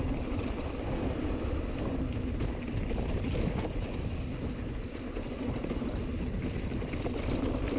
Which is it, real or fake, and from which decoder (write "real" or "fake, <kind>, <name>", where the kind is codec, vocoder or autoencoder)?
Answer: fake, vocoder, BigVGAN v2